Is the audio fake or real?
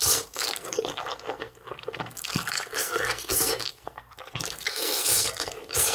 fake